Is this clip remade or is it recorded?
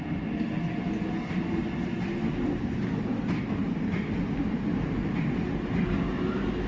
recorded